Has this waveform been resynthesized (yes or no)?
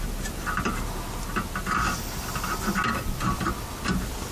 no